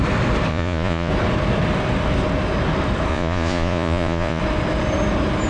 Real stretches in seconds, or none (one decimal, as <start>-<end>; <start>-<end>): 0.0-0.5; 1.1-3.1; 4.4-5.5